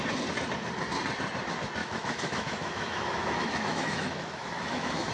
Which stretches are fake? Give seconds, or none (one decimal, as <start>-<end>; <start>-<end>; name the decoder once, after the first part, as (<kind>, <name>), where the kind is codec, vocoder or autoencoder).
1.8-5.1 (autoencoder, DAC-VAE)

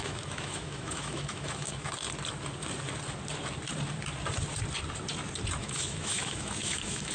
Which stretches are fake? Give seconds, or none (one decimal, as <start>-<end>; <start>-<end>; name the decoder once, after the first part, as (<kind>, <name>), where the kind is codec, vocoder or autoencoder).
0.0-1.9 (autoencoder, DAC-VAE); 5.6-7.1

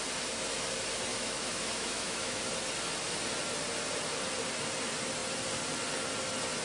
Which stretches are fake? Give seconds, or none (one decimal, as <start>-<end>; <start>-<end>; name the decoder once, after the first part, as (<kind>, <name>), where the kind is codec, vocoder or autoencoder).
1.1-2.4 (autoencoder, DAC-VAE)

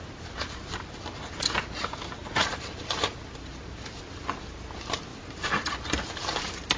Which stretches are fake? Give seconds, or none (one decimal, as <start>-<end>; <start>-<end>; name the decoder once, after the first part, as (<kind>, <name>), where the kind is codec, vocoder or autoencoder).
none

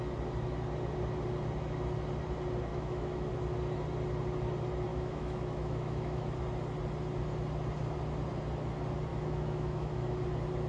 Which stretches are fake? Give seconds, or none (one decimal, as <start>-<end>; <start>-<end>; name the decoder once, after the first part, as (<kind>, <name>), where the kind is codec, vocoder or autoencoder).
2.7-3.3 (autoencoder, DAC-VAE); 4.9-6.4; 9.1-10.2

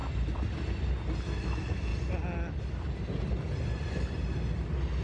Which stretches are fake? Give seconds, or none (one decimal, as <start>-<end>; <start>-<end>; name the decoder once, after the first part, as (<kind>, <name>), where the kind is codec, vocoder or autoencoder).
1.4-1.9 (autoencoder, DAC-VAE)